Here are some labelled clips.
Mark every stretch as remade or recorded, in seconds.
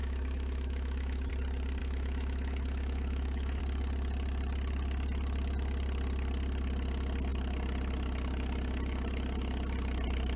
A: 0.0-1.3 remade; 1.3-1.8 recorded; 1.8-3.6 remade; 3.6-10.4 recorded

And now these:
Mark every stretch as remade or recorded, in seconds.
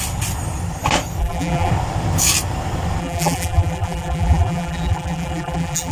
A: 0.0-1.2 recorded; 1.2-1.7 remade; 1.7-3.0 recorded; 3.0-5.9 remade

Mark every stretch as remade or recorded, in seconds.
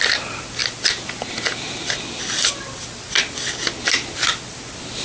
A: 0.0-5.0 recorded